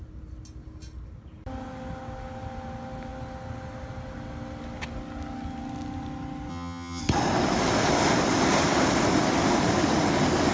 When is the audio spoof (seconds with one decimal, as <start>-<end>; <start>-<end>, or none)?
6.5-7.0